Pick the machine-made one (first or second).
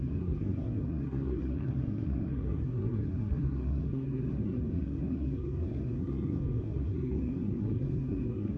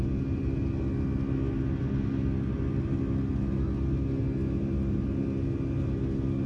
first